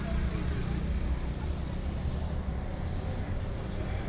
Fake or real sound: real